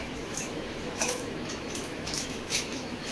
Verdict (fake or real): fake